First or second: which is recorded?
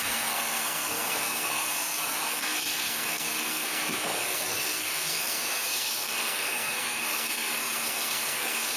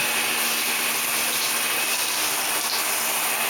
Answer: second